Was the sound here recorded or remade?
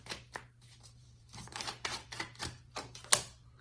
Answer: remade